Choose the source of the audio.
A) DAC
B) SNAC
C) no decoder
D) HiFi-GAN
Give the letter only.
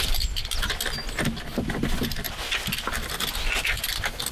C